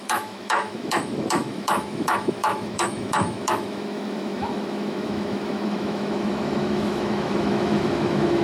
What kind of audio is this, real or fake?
fake